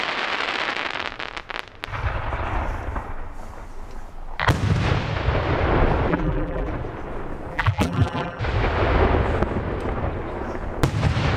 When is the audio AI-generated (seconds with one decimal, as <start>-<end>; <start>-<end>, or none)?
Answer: 6.1-6.7; 7.5-8.4